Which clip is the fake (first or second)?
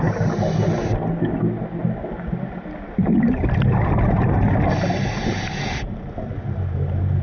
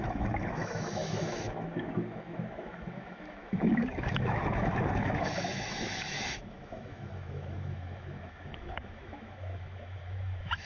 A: second